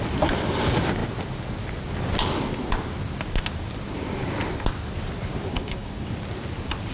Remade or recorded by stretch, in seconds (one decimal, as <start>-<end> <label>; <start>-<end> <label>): 0.0-5.5 recorded; 5.5-6.1 remade; 6.1-6.9 recorded